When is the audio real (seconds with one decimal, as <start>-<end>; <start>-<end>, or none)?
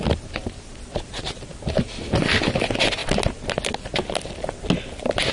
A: 0.0-5.3